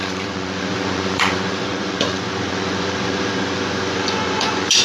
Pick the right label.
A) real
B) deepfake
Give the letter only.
B